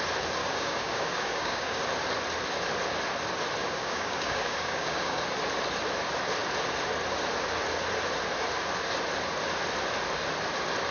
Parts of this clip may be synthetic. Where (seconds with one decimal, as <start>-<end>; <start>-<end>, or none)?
0.4-1.8; 3.6-5.2